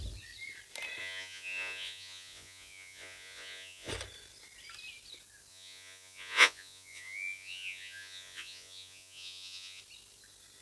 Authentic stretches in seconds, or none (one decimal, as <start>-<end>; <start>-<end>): 0.0-1.0; 3.9-5.5; 9.8-10.6